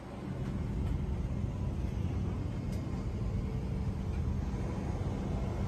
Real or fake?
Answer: real